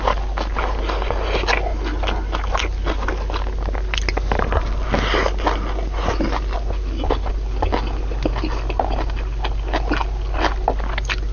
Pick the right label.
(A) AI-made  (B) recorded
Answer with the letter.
B